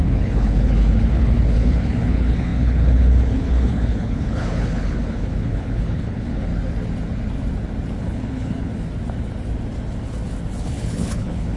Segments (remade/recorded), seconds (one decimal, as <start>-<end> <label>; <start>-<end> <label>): 0.0-6.5 remade; 6.5-8.0 recorded; 8.0-8.7 remade; 8.7-10.6 recorded; 10.6-11.6 remade